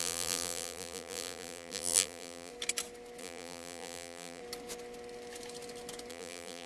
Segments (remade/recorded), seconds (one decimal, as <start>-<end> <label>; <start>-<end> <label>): 0.0-2.5 remade; 2.5-3.2 recorded; 3.2-4.4 remade; 4.4-6.1 recorded; 6.1-6.7 remade